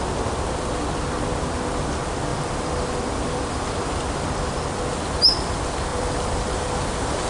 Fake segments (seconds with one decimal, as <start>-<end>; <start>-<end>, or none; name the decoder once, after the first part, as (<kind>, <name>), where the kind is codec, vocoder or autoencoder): 2.3-4.7 (vocoder, BigVGAN v2); 5.9-6.6